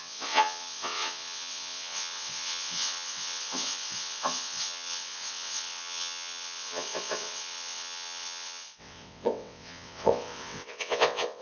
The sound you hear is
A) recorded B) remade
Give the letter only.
B